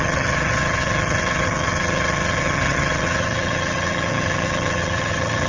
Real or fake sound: fake